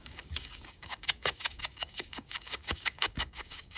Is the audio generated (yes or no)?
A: yes